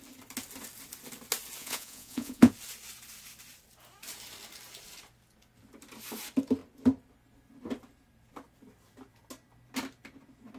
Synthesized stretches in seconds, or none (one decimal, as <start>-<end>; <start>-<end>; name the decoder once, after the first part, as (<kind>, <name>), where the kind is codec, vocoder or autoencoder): 1.6-2.5 (vocoder, Vocos)